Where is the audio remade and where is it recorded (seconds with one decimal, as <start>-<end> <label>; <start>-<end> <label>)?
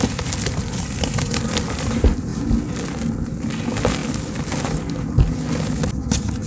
0.0-6.5 recorded